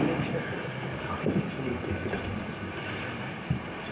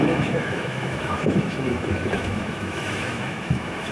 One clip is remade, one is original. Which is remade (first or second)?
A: second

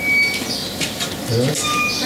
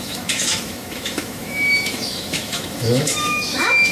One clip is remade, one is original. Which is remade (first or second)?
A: second